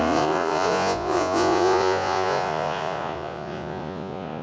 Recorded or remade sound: remade